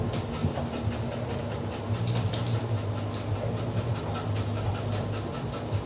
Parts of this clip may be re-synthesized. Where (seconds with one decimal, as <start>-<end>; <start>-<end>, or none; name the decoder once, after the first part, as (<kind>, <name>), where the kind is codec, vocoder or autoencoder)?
none